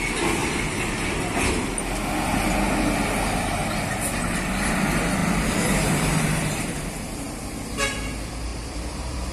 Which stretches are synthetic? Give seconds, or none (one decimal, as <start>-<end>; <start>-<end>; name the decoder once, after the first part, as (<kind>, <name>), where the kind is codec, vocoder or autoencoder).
0.4-1.2 (vocoder, BigVGAN v2); 5.2-7.4; 8.5-9.3